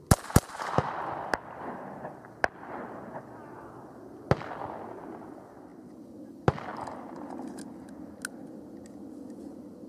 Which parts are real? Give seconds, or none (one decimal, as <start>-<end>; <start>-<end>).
0.0-9.9